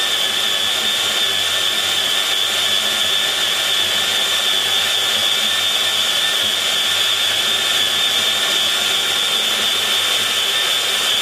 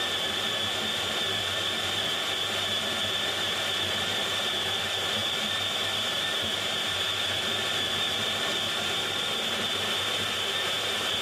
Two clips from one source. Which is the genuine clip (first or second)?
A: first